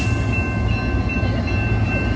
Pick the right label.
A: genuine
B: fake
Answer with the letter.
A